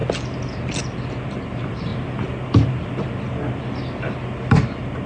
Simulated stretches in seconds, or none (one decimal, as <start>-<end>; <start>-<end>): 1.3-1.9; 4.5-5.1